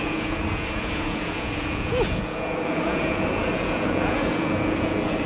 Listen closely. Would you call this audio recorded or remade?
remade